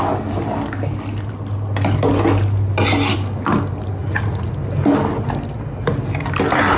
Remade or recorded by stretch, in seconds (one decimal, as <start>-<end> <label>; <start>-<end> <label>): 0.0-4.0 recorded; 4.0-4.5 remade; 4.5-6.8 recorded